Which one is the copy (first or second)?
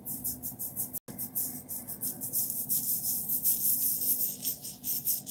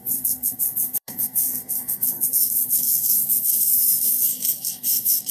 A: second